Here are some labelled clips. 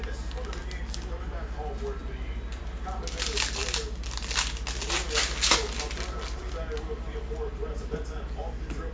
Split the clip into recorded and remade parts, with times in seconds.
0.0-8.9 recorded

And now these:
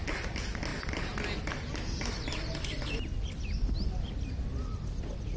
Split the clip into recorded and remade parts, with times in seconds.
0.0-5.4 recorded

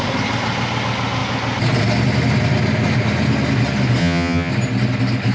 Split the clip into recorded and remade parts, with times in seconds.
0.0-4.0 recorded; 4.0-4.5 remade; 4.5-5.3 recorded

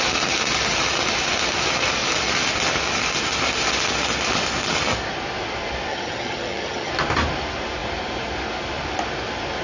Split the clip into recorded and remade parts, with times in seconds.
0.0-5.9 recorded; 5.9-6.9 remade; 6.9-9.6 recorded

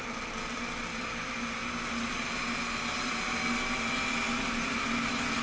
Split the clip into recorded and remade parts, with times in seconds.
0.0-5.4 recorded

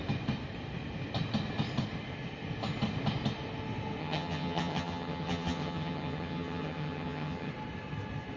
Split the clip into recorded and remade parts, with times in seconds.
0.0-4.0 recorded; 4.0-7.5 remade; 7.5-8.4 recorded

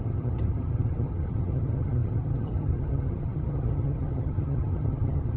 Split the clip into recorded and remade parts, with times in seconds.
0.0-5.4 remade